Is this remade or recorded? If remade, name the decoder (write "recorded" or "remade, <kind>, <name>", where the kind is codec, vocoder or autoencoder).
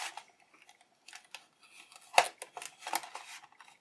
recorded